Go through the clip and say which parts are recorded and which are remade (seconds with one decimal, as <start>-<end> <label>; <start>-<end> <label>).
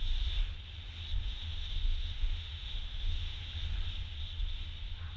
0.0-1.2 recorded; 1.2-3.4 remade; 3.4-5.2 recorded